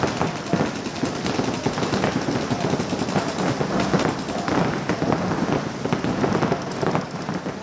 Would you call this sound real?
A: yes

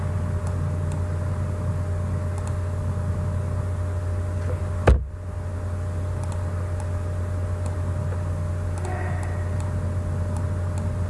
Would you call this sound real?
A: yes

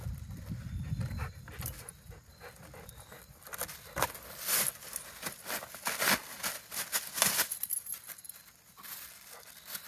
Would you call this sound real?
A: yes